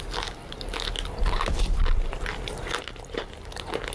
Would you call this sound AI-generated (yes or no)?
no